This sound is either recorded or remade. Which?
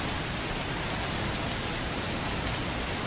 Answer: recorded